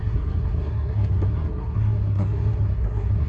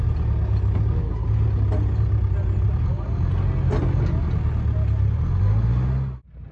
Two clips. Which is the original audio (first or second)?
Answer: second